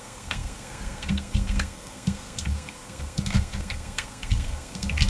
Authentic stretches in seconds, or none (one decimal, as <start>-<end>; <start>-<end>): none